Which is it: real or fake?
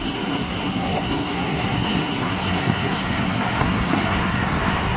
fake